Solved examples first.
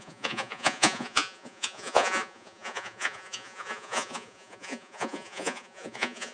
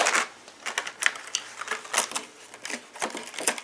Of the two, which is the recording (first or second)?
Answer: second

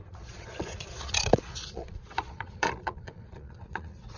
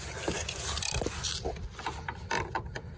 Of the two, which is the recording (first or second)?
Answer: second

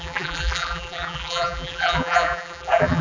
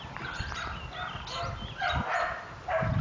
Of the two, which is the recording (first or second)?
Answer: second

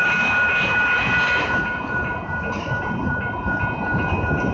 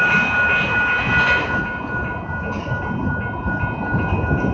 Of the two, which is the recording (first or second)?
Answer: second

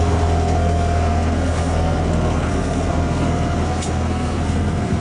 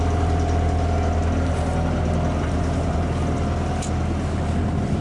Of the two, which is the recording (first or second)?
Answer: second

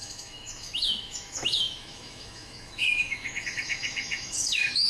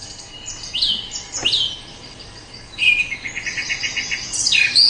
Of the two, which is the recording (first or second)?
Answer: second